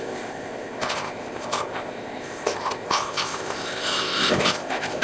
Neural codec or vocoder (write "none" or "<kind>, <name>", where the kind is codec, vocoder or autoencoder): codec, ZipCodec